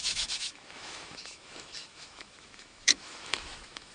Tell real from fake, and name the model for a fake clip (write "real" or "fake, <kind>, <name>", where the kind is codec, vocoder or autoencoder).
fake, autoencoder, DAC-VAE